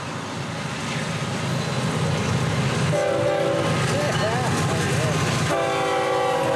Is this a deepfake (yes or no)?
no